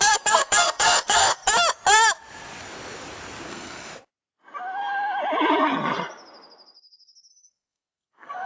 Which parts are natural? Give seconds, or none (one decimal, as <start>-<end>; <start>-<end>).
1.4-3.5; 3.9-7.3